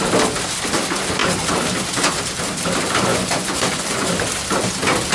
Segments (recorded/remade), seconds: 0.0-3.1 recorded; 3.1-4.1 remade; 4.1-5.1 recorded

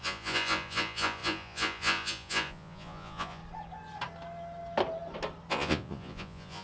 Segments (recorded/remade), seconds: 0.0-3.4 remade; 3.4-5.5 recorded; 5.5-6.6 remade